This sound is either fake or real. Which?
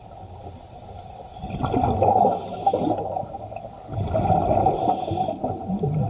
real